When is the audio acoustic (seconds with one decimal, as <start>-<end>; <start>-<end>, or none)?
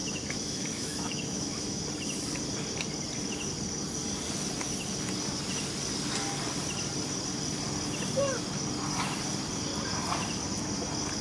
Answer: 1.8-11.2